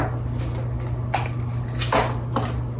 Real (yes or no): yes